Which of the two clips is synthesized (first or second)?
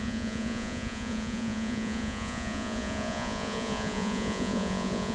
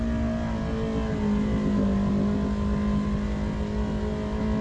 first